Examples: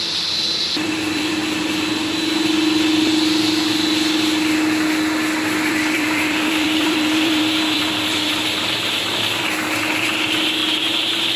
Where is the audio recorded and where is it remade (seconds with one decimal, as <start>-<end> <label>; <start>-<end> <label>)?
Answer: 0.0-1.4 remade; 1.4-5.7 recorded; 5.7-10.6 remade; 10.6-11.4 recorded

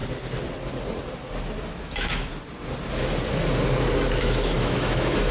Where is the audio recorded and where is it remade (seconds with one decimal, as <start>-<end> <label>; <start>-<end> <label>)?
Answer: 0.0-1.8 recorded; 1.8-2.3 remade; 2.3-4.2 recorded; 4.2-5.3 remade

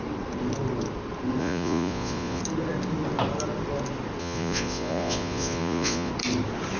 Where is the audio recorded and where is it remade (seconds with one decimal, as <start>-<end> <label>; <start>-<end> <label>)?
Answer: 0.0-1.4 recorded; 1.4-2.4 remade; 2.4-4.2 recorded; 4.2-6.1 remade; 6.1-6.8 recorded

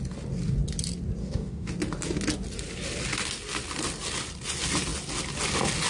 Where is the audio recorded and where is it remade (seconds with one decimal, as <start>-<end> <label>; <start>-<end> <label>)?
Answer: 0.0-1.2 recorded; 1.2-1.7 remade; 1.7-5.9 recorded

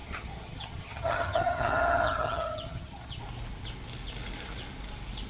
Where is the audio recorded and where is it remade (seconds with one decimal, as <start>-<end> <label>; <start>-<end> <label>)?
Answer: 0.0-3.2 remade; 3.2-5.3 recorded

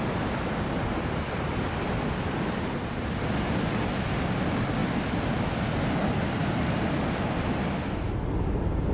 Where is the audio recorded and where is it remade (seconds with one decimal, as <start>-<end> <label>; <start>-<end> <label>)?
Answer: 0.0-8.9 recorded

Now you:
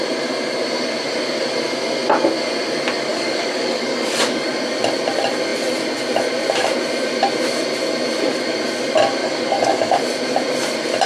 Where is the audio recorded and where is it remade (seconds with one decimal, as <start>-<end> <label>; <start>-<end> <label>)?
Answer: 0.0-3.1 recorded; 3.1-4.5 remade; 4.5-9.2 recorded; 9.2-9.9 remade; 9.9-11.1 recorded

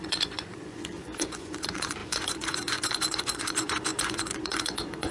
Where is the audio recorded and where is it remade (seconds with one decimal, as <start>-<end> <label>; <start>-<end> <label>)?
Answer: 0.0-5.1 remade